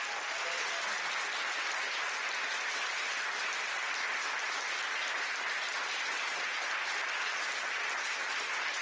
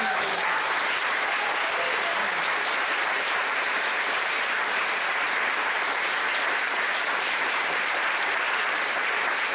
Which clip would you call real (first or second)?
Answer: first